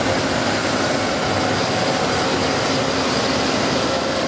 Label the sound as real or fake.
real